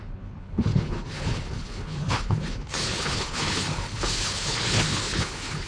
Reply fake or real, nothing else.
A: fake